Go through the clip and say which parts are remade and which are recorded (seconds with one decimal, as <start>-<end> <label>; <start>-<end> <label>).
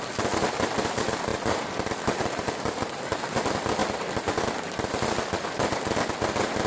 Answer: 0.0-1.3 recorded; 1.3-2.4 remade; 2.4-6.7 recorded